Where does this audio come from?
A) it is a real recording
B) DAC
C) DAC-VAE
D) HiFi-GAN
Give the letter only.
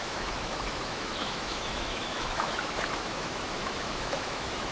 C